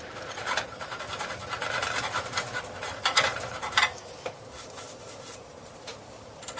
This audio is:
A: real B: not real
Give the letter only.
A